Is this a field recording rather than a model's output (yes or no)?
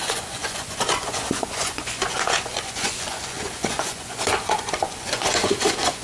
no